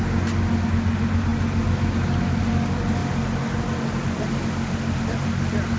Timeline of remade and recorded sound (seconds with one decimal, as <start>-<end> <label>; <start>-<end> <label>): 0.0-5.8 recorded